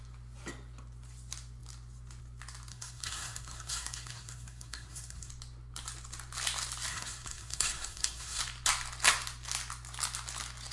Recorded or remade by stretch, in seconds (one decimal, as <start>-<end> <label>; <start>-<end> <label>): 0.0-2.7 recorded; 2.7-5.3 remade; 5.3-6.9 recorded; 6.9-8.4 remade; 8.4-10.7 recorded